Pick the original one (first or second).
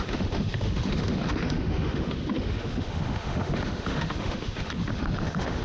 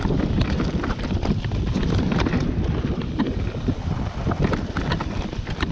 second